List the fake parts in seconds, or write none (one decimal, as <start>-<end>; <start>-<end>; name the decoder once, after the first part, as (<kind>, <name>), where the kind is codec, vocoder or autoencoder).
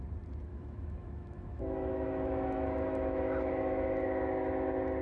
0.5-3.5 (autoencoder, DAC-VAE)